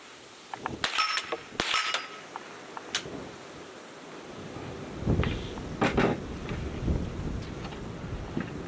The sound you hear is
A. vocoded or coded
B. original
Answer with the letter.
B